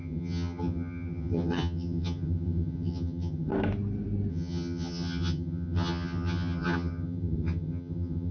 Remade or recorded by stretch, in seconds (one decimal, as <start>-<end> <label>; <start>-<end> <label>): 0.0-3.5 remade; 3.5-4.3 recorded; 4.3-8.3 remade